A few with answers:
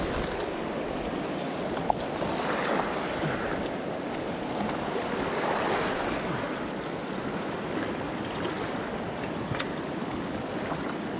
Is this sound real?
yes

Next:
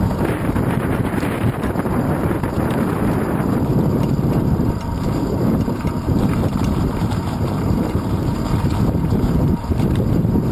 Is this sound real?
no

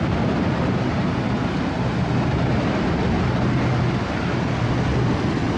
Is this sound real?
yes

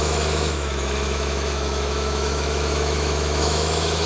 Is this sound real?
no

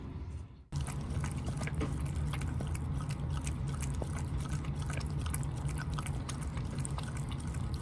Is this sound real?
yes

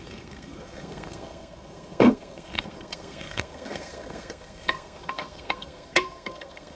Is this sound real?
no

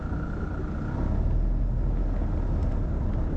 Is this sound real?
yes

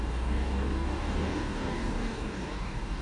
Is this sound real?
no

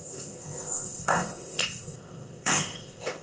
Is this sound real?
no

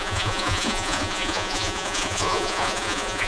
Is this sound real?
no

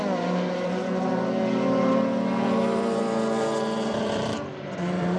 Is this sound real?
no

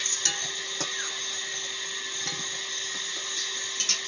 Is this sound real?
yes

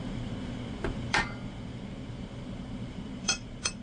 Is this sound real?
no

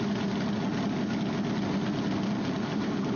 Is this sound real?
yes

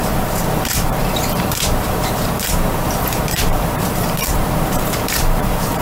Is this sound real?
no